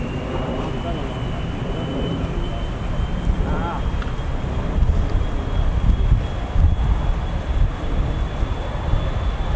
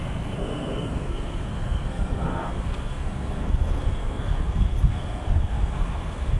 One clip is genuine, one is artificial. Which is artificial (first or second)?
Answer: second